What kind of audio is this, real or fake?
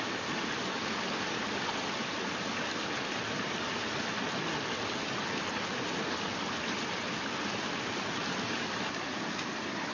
real